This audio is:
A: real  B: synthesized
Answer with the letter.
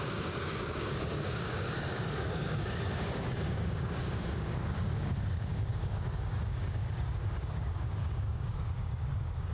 B